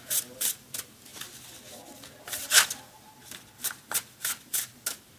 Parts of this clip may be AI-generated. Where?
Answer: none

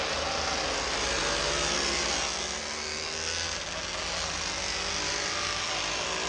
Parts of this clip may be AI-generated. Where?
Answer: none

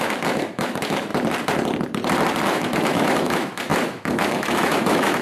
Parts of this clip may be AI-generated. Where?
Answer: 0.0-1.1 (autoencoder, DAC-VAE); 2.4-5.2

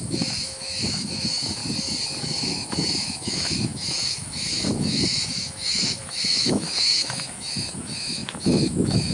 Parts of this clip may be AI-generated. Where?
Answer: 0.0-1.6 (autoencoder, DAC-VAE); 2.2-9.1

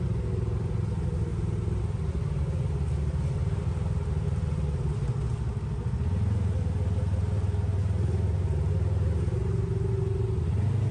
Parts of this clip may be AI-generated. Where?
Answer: none